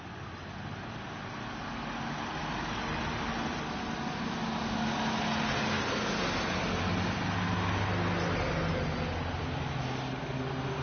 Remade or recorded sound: recorded